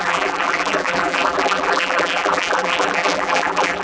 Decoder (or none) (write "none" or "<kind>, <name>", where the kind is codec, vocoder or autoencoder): vocoder, BigVGAN v2